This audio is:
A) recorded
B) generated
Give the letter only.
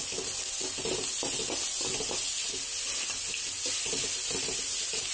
A